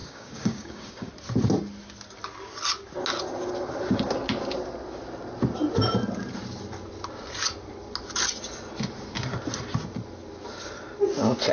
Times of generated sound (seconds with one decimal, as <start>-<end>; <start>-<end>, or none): 0.0-1.1